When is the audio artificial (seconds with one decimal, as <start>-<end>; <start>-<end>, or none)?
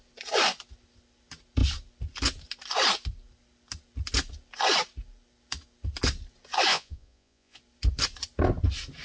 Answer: 6.7-7.6